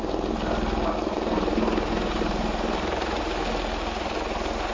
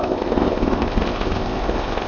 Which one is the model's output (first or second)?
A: second